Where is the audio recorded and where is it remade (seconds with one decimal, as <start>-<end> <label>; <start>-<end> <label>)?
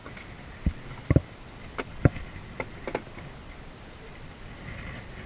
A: 0.0-5.3 recorded